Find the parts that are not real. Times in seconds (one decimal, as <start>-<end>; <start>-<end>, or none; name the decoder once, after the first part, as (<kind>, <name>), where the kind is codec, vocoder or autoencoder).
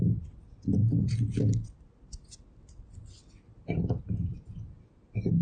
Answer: none